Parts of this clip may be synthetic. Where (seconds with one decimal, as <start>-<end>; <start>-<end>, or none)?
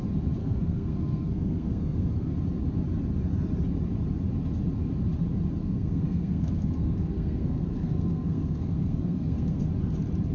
0.4-2.3; 5.6-9.7